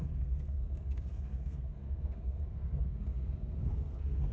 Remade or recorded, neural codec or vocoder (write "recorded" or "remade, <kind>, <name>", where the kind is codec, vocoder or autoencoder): remade, codec, SNAC